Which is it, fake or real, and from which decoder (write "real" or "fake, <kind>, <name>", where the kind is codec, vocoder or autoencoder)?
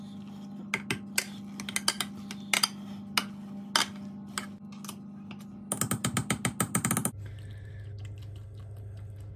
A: real